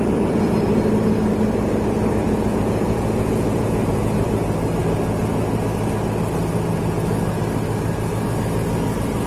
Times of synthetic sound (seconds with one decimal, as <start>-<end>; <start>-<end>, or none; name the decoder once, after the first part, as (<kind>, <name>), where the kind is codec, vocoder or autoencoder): 2.2-4.0 (vocoder, Vocos)